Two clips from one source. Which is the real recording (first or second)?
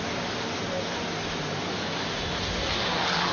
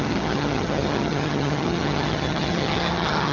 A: first